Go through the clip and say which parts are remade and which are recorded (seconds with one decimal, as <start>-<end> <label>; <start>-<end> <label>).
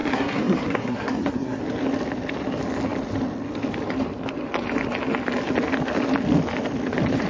0.0-1.6 remade; 1.6-7.3 recorded